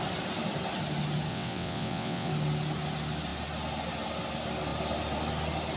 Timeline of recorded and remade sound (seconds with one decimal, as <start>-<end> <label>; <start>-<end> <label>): 0.0-1.3 recorded; 1.3-2.3 remade; 2.3-5.8 recorded